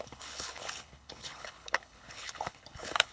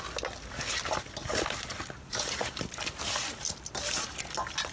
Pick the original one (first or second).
second